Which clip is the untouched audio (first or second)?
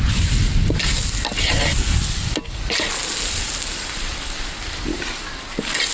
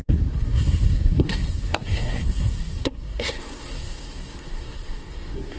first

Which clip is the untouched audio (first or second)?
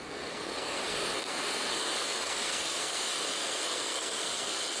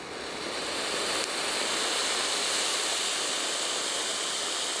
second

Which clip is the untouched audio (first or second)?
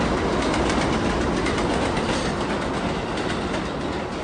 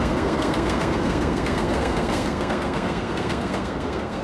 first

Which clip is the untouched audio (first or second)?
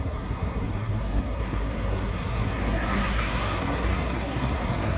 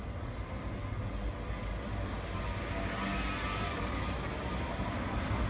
second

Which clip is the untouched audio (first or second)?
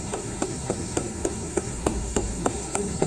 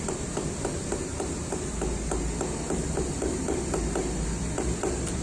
second